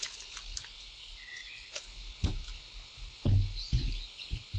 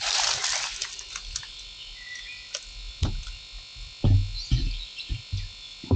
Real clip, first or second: second